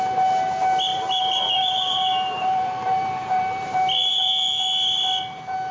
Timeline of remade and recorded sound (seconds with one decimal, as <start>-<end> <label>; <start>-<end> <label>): 0.0-0.9 recorded; 0.9-4.3 remade; 4.3-5.7 recorded